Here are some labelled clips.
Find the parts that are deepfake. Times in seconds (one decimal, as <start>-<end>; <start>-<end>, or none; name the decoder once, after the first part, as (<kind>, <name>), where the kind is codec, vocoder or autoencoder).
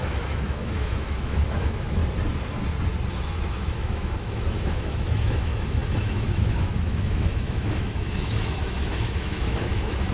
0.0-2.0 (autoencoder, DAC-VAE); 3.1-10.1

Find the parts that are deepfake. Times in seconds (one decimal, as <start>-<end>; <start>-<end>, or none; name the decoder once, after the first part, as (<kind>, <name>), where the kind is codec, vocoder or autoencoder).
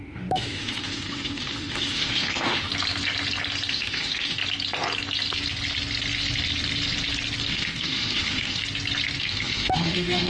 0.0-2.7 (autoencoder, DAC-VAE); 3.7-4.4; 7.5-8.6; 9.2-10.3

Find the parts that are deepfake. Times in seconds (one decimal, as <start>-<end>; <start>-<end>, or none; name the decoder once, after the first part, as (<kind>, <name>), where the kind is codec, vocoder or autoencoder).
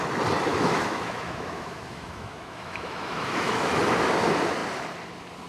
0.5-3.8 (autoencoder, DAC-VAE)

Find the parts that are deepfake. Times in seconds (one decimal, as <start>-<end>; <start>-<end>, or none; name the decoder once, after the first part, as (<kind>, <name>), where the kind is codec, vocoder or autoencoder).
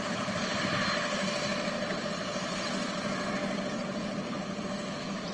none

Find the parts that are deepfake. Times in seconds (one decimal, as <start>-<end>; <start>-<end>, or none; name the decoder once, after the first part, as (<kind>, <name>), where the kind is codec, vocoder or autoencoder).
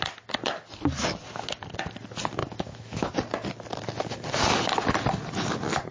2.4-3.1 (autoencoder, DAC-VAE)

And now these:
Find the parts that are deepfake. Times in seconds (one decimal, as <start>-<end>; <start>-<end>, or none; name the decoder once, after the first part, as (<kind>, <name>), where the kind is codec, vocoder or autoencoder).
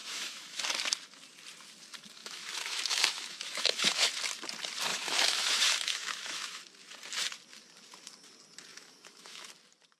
0.0-0.6 (autoencoder, DAC-VAE); 2.2-4.1; 4.9-6.6; 8.7-9.5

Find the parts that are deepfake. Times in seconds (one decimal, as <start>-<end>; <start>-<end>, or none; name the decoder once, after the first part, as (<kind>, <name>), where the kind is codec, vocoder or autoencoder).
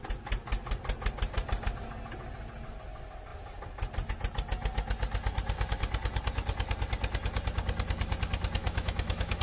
8.6-9.4 (autoencoder, DAC-VAE)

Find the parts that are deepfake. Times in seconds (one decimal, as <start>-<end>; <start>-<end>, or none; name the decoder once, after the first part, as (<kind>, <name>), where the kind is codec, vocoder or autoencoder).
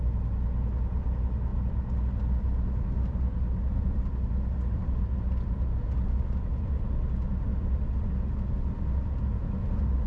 none